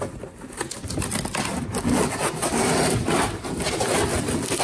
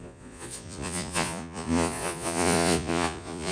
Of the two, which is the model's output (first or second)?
second